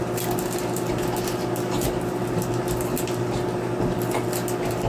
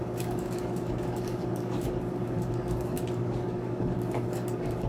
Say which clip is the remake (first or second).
second